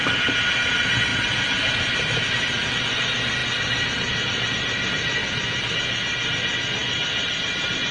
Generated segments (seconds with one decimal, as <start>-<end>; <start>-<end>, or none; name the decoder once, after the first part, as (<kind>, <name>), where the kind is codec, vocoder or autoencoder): 1.1-2.7 (vocoder, BigVGAN v2); 5.2-5.7